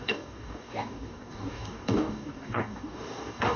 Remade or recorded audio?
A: remade